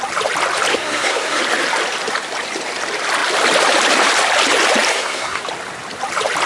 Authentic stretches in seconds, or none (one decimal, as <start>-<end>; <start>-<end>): 0.0-0.7; 1.4-4.9; 5.4-6.5